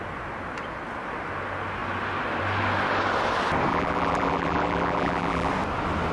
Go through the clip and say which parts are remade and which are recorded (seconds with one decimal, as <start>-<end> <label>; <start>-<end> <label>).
0.0-3.7 recorded; 3.7-5.5 remade; 5.5-6.1 recorded